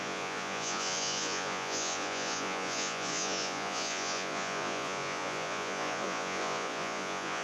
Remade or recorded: remade